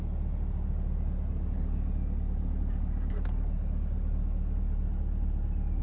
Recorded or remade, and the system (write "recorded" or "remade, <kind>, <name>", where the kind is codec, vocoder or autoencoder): recorded